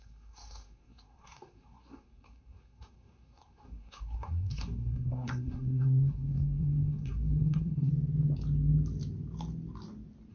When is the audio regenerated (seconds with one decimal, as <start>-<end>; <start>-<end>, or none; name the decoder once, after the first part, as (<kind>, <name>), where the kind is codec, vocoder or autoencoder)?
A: 0.0-7.9 (codec, SNAC)